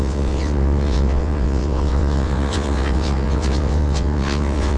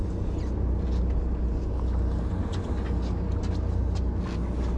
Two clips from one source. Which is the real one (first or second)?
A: second